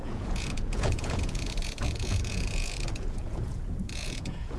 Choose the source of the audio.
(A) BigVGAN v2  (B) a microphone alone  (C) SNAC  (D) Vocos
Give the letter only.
D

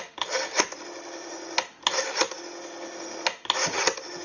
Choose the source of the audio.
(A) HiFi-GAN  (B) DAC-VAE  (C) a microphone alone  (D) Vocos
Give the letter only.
C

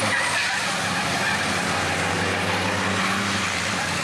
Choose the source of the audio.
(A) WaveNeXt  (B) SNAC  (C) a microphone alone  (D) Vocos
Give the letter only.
C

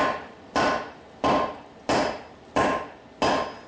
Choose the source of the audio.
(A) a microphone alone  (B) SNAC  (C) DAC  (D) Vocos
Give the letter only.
A